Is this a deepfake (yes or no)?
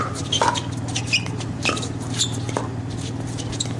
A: no